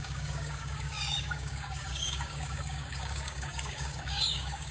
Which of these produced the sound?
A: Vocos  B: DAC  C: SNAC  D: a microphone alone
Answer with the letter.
B